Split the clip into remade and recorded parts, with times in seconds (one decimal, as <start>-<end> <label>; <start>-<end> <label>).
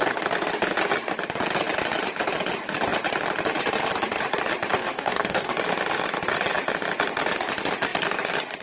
0.0-4.8 recorded; 4.8-5.5 remade; 5.5-8.6 recorded